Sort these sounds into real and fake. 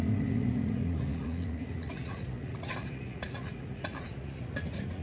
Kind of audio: fake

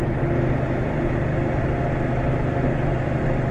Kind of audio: real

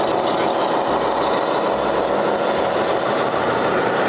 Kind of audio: real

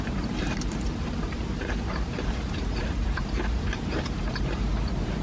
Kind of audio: fake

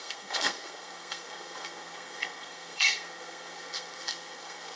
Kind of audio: fake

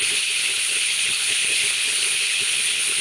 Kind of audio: fake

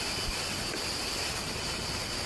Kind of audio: real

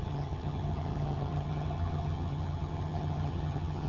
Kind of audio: fake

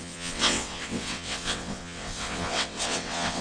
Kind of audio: fake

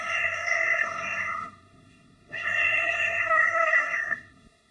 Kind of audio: fake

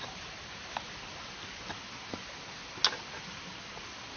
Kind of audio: real